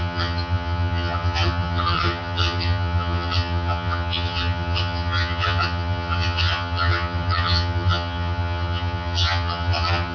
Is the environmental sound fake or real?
fake